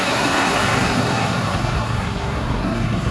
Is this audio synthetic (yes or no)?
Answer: yes